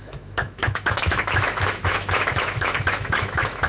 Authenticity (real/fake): fake